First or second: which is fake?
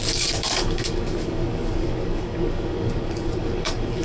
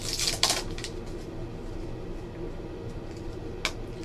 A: first